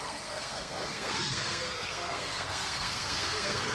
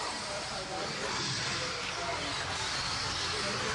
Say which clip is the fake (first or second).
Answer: first